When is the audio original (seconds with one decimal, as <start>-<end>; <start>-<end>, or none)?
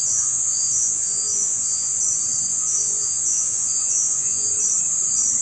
2.0-2.5; 4.5-5.4